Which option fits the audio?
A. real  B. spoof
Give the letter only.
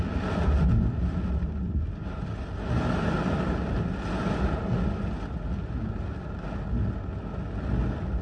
A